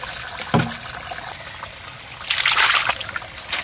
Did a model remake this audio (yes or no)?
no